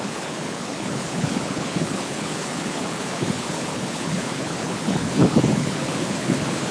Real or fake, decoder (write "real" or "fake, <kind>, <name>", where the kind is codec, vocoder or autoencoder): fake, codec, HILCodec